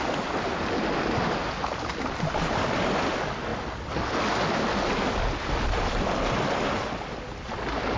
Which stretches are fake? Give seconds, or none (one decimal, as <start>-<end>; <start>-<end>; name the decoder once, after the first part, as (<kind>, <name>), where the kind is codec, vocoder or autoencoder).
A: none

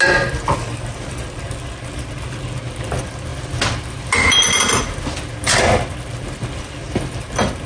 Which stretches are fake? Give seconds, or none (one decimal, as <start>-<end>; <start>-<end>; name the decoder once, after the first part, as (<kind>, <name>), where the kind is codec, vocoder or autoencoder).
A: none

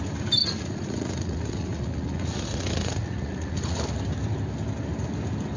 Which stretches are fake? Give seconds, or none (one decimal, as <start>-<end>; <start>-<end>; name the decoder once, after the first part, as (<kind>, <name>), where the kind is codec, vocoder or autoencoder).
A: 0.4-3.8 (vocoder, Vocos)

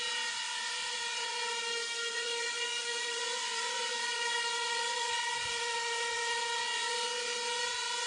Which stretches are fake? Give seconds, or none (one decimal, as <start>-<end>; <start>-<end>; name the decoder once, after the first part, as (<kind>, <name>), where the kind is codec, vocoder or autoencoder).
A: 0.8-1.3 (vocoder, Vocos); 2.1-6.6